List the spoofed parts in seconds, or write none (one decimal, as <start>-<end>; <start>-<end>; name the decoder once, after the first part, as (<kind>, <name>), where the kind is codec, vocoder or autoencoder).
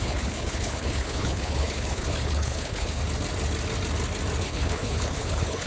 0.0-3.0 (codec, HILCodec); 4.4-5.7